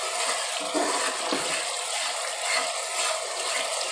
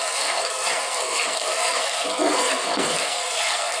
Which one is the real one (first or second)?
first